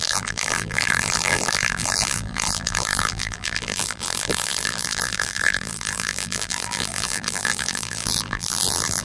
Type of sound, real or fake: fake